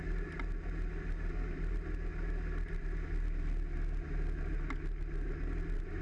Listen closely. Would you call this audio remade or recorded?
recorded